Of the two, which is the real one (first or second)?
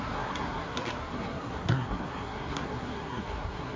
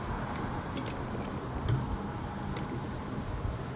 second